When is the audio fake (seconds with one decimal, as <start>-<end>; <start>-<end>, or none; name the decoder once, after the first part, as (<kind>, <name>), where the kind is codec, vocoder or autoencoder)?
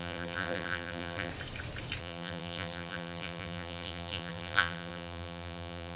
0.0-1.3 (vocoder, BigVGAN v2); 2.0-6.0